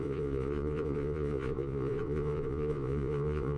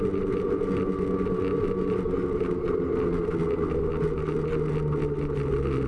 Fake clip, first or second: first